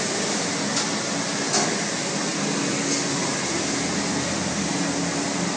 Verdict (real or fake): real